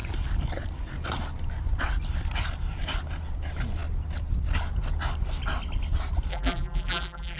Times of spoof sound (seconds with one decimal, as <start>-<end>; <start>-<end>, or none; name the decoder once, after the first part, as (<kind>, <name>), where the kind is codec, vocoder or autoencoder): 6.3-7.4 (vocoder, BigVGAN v2)